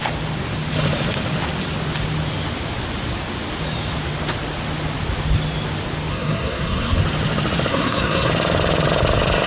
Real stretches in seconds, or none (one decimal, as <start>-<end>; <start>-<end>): 0.0-6.1; 7.0-7.7; 8.3-9.5